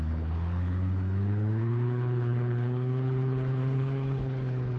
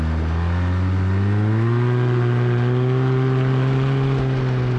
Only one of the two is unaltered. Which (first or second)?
second